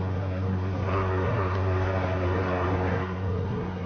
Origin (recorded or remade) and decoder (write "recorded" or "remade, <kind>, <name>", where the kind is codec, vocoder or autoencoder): remade, codec, SNAC